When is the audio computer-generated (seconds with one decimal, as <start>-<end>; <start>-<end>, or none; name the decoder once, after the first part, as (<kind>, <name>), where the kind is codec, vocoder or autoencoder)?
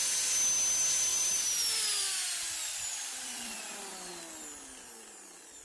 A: 1.1-3.6 (vocoder, BigVGAN v2)